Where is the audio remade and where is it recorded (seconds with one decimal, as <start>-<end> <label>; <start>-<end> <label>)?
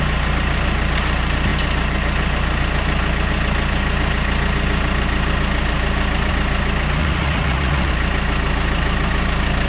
0.0-7.0 recorded; 7.0-7.9 remade; 7.9-9.7 recorded